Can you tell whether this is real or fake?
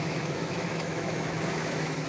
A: fake